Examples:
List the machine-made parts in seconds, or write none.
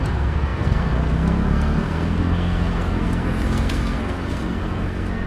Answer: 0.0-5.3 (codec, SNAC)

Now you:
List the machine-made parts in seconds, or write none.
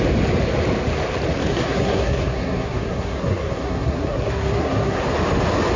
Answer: 1.5-5.0 (codec, SNAC)